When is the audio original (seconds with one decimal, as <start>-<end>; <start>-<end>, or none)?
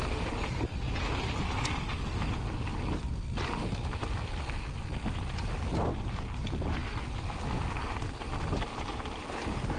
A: 0.0-9.8